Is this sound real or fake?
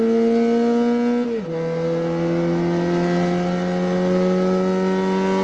real